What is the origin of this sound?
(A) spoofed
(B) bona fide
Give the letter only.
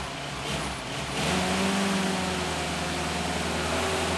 B